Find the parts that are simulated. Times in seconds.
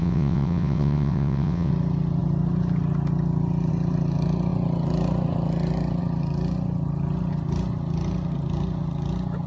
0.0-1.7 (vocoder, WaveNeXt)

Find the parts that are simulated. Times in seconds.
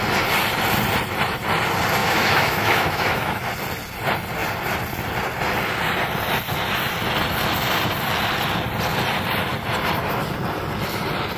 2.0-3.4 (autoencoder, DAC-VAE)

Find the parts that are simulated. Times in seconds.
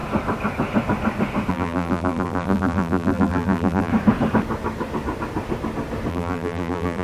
1.5-3.9 (vocoder, BigVGAN v2); 6.1-7.0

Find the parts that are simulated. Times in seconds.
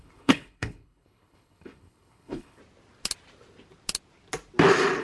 0.0-2.6 (codec, HILCodec)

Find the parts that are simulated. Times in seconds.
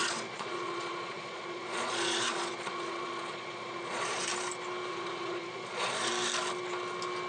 0.0-4.3 (vocoder, Vocos); 4.9-6.1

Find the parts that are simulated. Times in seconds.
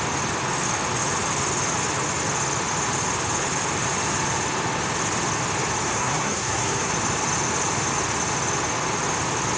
5.9-6.9 (codec, SNAC)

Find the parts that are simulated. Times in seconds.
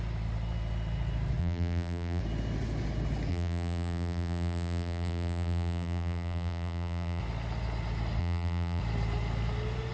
1.4-2.2 (vocoder, BigVGAN v2); 3.3-7.2; 8.2-8.8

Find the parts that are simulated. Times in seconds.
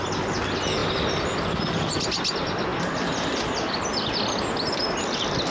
none